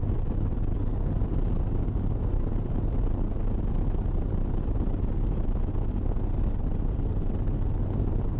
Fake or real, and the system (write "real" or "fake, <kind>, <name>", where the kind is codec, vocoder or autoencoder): real